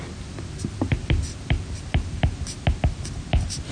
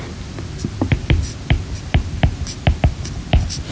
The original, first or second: first